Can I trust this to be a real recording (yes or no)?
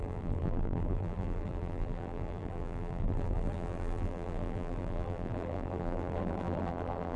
no